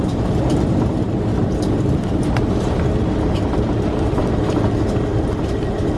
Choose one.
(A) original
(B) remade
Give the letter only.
A